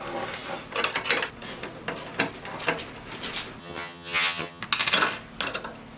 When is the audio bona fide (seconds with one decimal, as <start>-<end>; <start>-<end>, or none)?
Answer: 0.0-3.6; 4.6-6.0